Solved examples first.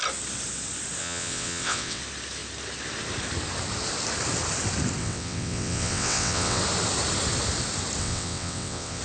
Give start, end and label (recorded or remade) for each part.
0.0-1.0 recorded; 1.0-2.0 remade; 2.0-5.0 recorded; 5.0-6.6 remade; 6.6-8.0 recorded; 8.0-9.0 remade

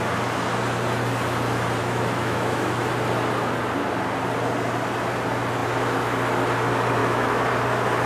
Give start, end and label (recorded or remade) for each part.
0.0-1.8 recorded; 1.8-2.9 remade; 2.9-7.0 recorded; 7.0-7.5 remade; 7.5-8.1 recorded